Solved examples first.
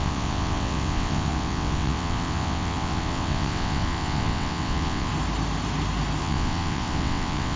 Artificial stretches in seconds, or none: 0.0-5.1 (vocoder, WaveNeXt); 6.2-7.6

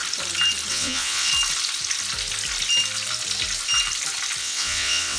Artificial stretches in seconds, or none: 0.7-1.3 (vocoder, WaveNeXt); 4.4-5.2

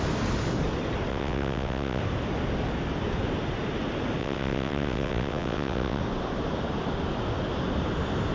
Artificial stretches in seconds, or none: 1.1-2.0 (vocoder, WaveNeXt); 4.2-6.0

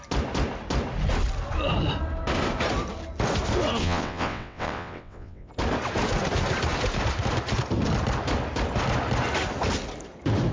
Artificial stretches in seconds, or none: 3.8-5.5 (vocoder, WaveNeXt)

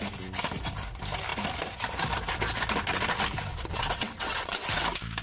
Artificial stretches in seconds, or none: 3.5-4.8 (vocoder, WaveNeXt)

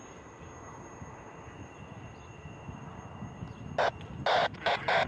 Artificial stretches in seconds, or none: none

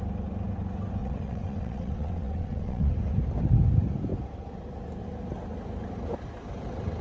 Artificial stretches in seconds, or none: 1.0-2.9 (vocoder, WaveNeXt)

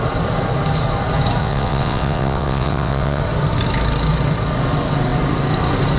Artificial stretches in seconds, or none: 1.4-3.2 (vocoder, WaveNeXt)